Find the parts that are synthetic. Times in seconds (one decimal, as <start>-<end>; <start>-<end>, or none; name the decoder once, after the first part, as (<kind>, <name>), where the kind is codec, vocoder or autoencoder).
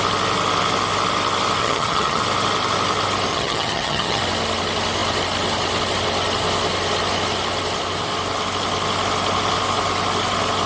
1.6-2.2 (vocoder, HiFi-GAN); 3.3-4.2